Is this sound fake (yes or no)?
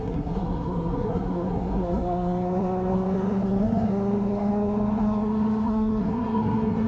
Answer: yes